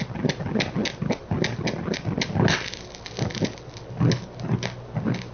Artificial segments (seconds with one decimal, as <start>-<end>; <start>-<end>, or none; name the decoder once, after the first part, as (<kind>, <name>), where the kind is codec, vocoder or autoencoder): none